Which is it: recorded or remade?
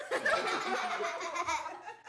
recorded